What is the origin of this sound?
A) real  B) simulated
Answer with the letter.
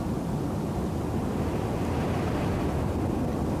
A